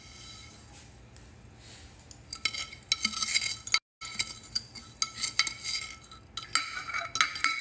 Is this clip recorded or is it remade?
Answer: recorded